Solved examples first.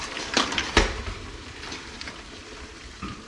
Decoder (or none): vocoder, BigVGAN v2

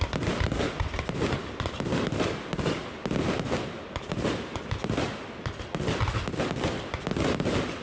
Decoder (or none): none